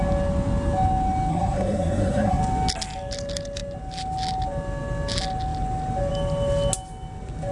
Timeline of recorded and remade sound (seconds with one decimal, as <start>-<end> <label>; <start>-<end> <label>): 0.0-1.3 recorded; 1.3-2.4 remade; 2.4-7.5 recorded